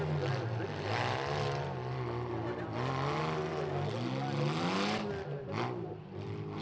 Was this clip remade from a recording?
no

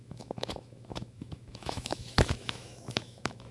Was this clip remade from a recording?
yes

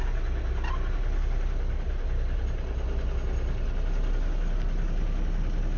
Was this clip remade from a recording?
no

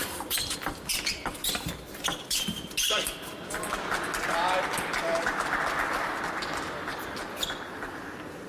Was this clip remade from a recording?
no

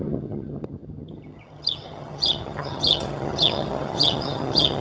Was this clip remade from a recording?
yes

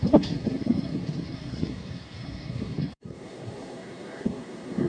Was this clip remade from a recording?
yes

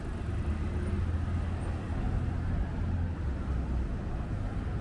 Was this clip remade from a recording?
no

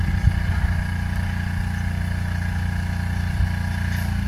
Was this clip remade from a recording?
no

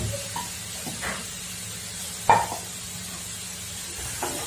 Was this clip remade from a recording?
no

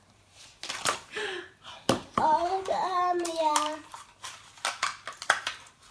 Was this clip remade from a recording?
yes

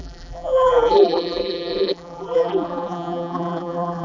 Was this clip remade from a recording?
yes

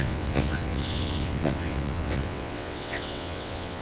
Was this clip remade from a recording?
yes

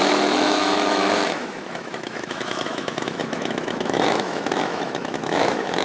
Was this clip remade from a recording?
yes